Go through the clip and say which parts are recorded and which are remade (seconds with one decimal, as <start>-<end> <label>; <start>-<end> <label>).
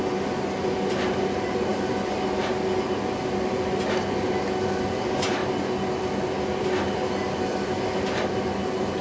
0.0-9.0 recorded